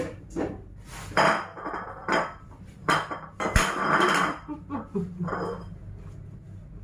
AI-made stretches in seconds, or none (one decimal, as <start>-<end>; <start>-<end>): none

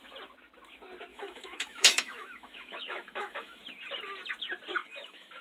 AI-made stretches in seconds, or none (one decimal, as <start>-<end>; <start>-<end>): 1.1-3.6; 4.8-5.4

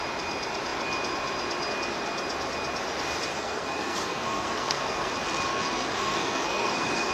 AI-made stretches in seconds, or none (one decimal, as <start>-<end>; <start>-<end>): 3.3-5.1; 5.5-7.1

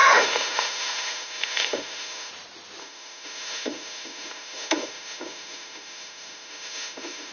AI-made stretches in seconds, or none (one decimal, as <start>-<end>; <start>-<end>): 0.0-2.3; 2.8-7.3

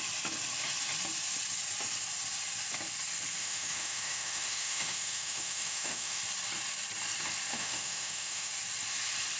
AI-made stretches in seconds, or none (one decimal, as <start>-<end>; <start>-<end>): 3.4-6.2; 7.5-8.5

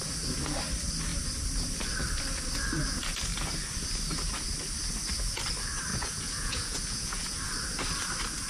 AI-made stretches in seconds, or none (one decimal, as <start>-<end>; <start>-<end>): 5.9-7.4